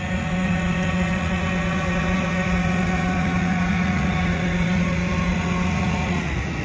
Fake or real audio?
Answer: fake